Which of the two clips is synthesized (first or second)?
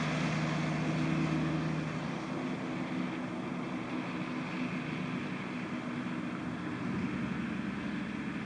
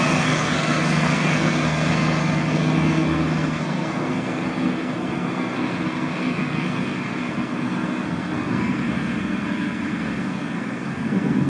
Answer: second